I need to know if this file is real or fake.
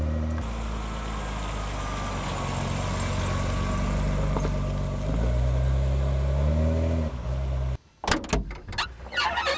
real